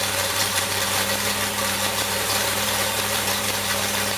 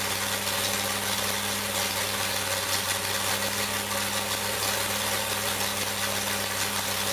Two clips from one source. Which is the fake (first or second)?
first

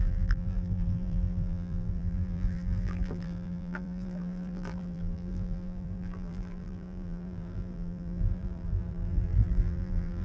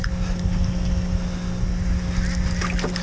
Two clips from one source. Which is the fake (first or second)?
first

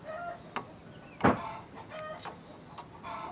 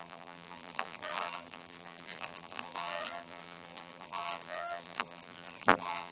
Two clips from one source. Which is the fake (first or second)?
second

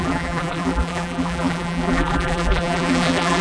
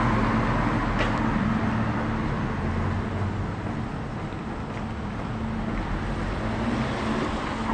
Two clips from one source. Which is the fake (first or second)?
first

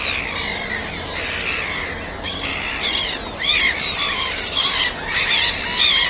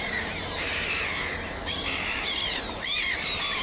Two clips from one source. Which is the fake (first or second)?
second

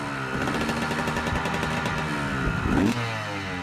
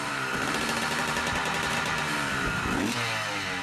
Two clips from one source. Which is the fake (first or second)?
second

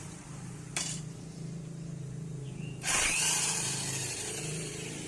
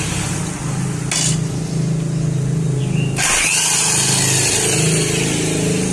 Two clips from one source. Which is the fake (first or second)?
first